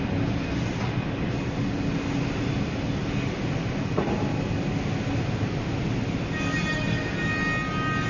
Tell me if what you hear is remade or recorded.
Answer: recorded